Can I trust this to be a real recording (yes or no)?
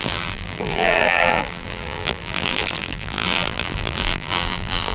no